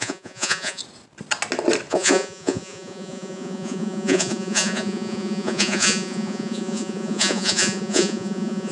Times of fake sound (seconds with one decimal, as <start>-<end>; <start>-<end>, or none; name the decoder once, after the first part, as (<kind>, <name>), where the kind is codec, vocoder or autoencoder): 0.0-0.8 (vocoder, Vocos); 1.9-8.7